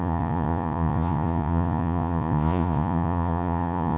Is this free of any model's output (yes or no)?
no